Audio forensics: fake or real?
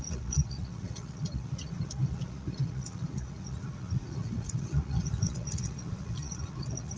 fake